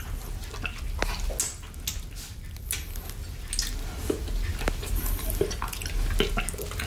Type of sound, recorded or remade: recorded